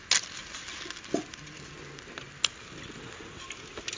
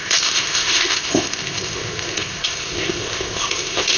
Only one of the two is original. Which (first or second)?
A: first